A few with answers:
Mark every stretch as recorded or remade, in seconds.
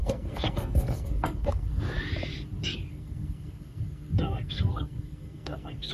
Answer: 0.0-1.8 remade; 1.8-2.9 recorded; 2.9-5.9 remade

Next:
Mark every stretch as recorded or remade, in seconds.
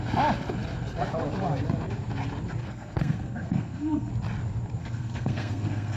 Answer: 0.0-2.6 recorded; 2.6-4.1 remade; 4.1-4.8 recorded; 4.8-6.0 remade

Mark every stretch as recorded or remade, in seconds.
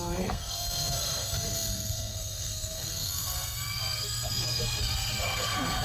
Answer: 0.0-5.8 remade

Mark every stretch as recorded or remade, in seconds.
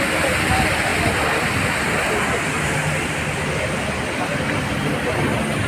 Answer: 0.0-5.7 recorded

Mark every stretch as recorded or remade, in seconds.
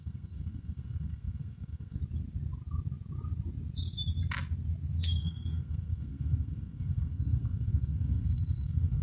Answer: 0.0-2.0 remade; 2.0-5.2 recorded; 5.2-9.0 remade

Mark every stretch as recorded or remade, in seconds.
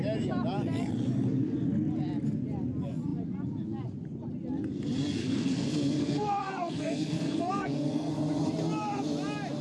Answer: 0.0-5.2 recorded; 5.2-8.1 remade; 8.1-9.6 recorded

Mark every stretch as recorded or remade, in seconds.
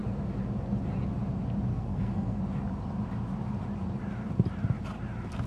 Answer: 0.0-1.7 recorded; 1.7-2.4 remade; 2.4-5.5 recorded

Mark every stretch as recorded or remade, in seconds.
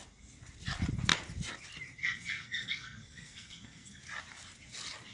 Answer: 0.0-2.0 recorded; 2.0-4.0 remade; 4.0-5.1 recorded